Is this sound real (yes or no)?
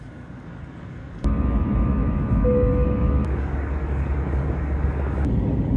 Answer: no